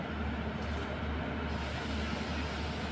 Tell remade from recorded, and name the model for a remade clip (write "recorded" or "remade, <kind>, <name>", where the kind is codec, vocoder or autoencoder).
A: recorded